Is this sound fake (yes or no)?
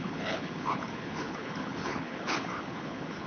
yes